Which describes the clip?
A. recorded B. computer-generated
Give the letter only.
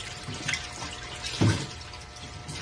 A